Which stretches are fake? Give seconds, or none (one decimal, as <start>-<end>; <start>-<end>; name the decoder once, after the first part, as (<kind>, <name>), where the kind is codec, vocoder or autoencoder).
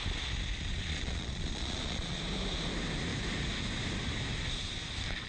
0.7-2.2 (vocoder, Vocos)